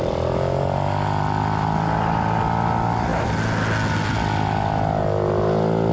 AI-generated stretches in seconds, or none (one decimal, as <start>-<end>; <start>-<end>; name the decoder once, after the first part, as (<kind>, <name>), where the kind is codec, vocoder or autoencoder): none